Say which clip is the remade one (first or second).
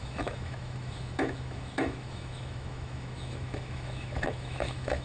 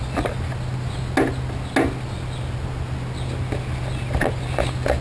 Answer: first